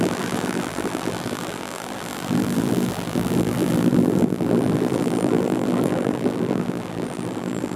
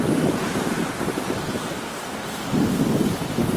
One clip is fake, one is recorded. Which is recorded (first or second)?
second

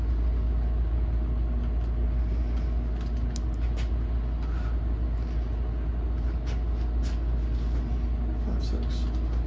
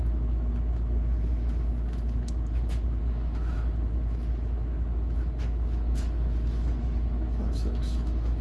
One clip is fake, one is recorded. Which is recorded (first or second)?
first